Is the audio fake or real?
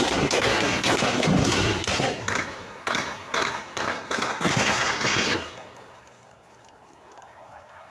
fake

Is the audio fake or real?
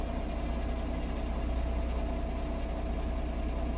real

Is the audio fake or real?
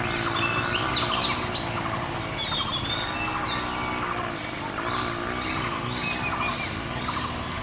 real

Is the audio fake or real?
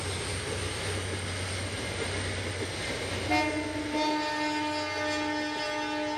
real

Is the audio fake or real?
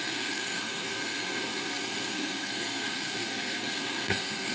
fake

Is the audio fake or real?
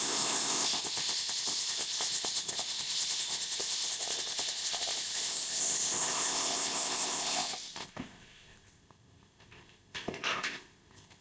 fake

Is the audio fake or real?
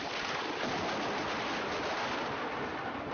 real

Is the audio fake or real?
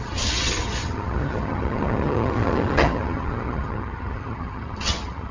fake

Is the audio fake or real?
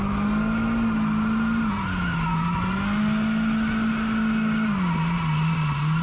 real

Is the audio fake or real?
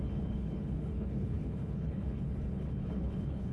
fake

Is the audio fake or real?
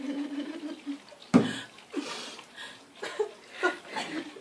real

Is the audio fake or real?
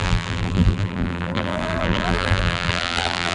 fake